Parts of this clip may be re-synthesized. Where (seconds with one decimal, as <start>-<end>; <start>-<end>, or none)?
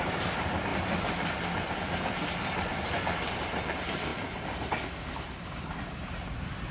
0.0-6.7